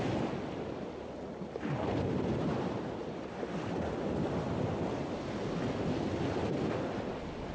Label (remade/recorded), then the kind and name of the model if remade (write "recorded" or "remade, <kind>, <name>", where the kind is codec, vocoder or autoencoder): recorded